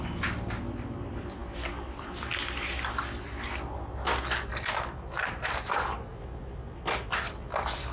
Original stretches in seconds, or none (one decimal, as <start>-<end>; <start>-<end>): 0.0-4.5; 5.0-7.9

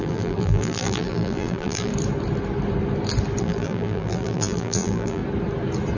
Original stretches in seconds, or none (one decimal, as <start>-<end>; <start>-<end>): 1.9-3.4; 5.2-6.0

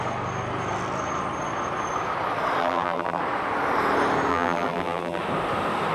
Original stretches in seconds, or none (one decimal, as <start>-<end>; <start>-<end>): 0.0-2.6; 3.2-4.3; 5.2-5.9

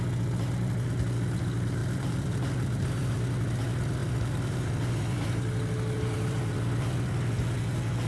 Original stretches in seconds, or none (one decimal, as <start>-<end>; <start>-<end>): 0.0-1.8; 3.3-4.0; 7.3-8.1

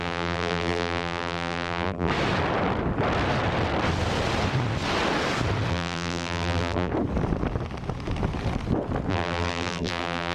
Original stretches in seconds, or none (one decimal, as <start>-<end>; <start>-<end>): 2.1-5.7; 6.9-9.1

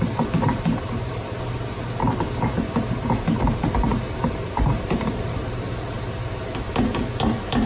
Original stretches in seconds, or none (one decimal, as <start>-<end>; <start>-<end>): 0.0-3.9; 5.5-7.7

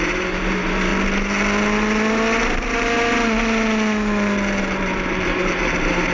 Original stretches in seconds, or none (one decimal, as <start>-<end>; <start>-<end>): 0.9-4.6